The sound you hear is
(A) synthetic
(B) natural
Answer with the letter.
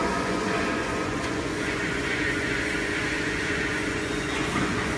A